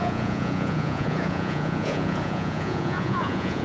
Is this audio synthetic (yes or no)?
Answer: yes